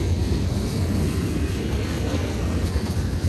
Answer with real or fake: fake